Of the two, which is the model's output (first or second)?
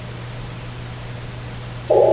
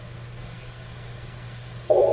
second